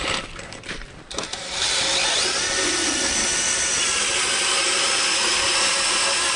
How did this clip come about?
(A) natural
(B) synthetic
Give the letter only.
A